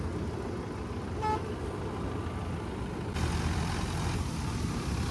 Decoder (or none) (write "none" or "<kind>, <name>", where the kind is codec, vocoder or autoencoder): none